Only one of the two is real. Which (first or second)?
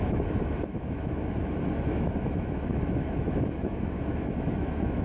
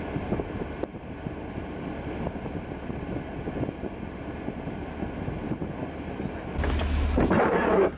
second